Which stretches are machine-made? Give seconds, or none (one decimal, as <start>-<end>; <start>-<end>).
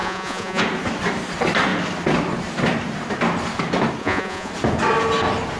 0.0-0.6; 4.0-4.5